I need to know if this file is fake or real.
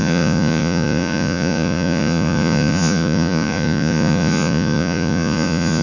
fake